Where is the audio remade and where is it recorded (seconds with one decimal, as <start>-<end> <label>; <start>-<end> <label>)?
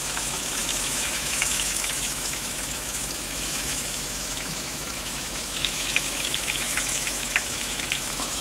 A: 0.0-8.4 remade